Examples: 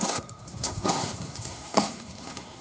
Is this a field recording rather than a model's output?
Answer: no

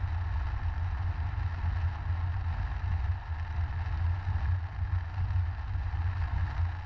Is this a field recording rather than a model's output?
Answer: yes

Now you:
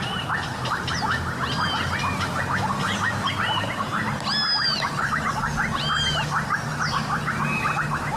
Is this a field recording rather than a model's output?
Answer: yes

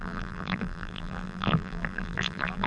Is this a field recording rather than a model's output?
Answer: no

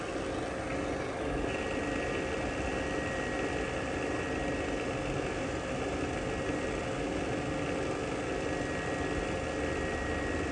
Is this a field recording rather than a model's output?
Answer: yes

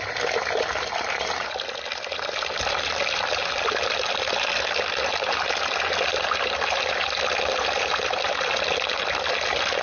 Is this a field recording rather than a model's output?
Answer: yes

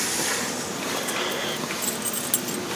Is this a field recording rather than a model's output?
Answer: yes